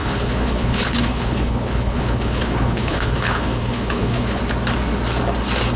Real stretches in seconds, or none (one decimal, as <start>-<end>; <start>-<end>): 4.4-5.8